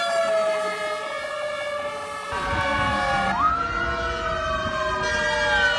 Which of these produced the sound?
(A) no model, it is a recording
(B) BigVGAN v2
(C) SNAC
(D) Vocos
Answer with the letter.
A